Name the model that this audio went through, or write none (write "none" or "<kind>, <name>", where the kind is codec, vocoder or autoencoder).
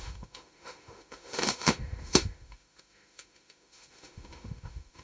autoencoder, DAC-VAE